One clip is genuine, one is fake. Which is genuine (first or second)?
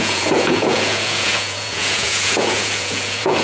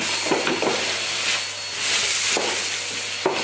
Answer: second